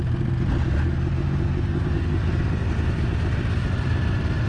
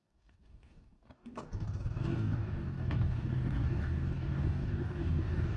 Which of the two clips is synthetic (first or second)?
second